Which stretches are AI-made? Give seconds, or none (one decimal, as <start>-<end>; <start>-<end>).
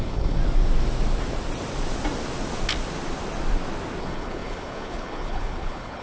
0.0-0.4; 4.0-6.0